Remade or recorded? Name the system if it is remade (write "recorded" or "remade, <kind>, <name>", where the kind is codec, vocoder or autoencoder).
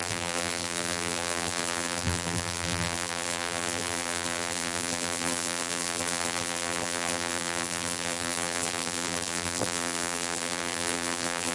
remade, vocoder, BigVGAN v2